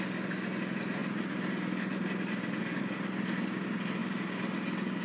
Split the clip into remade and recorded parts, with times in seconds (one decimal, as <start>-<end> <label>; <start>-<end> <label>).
0.0-5.0 recorded